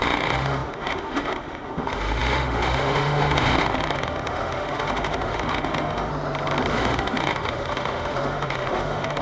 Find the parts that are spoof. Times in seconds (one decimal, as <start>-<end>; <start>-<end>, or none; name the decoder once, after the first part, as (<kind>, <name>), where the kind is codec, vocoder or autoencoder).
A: 0.0-6.1 (autoencoder, DAC-VAE); 6.7-9.2